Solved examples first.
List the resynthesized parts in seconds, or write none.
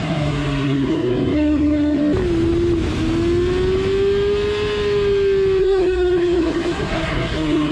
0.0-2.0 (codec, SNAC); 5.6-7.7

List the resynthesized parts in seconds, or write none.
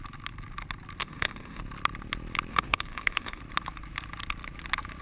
1.0-1.6 (autoencoder, DAC-VAE); 2.5-3.4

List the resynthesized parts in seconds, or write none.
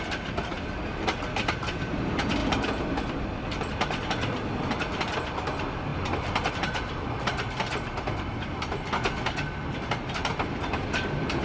none